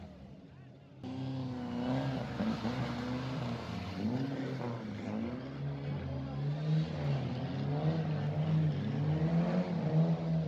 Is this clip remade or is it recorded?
recorded